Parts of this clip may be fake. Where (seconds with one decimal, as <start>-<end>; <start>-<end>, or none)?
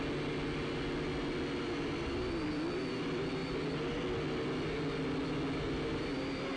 none